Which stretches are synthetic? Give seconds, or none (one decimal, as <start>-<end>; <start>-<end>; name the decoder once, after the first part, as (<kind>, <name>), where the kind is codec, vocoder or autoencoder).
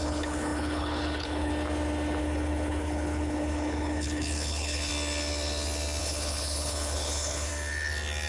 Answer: 0.0-1.5 (codec, HILCodec); 2.2-4.9; 6.0-7.5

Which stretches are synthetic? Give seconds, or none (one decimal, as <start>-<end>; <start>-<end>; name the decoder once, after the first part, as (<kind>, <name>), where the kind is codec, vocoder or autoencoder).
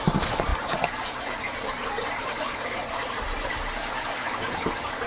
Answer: none